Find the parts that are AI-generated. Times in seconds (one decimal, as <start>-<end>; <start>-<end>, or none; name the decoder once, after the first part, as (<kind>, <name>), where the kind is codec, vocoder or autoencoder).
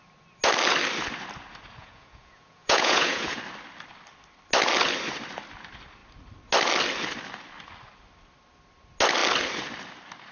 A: 1.8-3.4 (vocoder, Vocos)